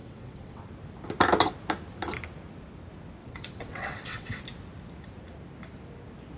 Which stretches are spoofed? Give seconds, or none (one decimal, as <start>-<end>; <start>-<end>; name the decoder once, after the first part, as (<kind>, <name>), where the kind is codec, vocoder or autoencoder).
0.0-0.6 (vocoder, WaveNeXt); 3.2-4.4